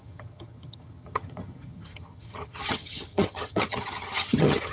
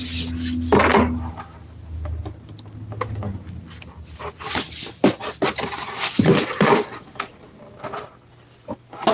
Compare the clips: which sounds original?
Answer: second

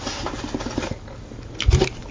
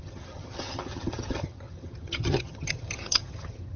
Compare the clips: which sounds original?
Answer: first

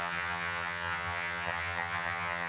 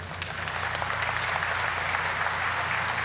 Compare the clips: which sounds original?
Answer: second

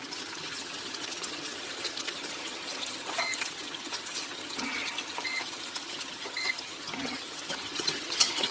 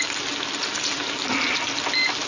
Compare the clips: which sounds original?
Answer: second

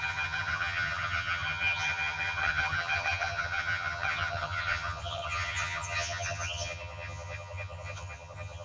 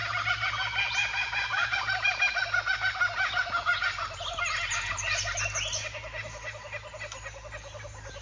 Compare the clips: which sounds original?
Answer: second